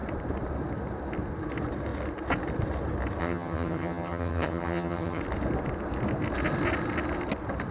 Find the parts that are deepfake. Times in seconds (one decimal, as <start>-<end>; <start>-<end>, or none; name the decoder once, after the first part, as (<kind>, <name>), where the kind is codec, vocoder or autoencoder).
3.2-5.2 (vocoder, HiFi-GAN)